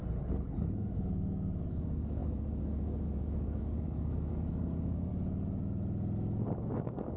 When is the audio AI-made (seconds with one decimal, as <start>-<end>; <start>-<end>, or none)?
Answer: 0.8-5.1; 6.7-7.2